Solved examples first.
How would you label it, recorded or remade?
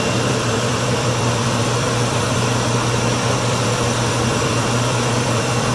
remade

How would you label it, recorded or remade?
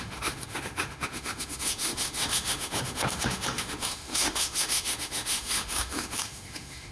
remade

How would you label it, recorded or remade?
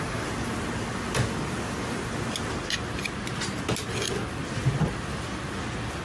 recorded